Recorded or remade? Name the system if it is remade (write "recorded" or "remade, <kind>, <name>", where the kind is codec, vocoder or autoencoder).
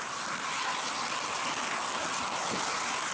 recorded